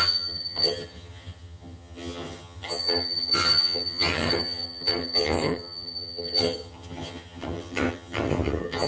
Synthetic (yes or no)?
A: yes